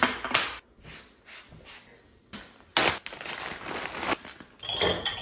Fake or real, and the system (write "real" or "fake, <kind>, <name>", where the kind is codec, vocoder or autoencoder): real